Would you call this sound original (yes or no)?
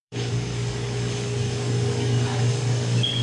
no